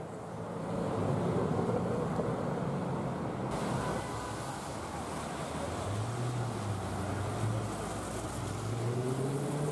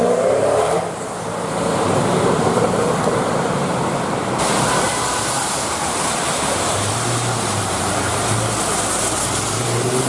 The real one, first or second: first